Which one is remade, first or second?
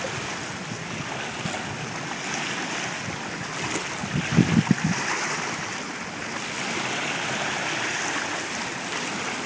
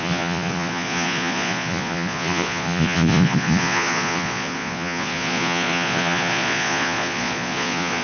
second